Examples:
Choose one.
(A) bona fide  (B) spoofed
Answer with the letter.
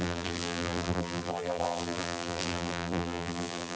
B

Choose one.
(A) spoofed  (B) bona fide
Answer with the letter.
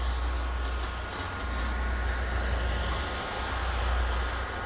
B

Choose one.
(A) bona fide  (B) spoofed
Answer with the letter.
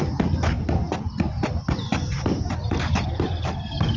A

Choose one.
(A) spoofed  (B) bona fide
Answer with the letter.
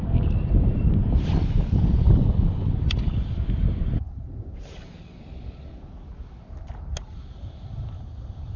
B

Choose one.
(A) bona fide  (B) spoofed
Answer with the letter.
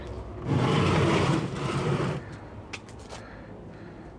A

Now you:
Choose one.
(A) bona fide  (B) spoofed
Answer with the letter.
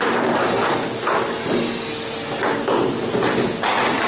A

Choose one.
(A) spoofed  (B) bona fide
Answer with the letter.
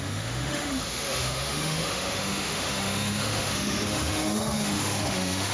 A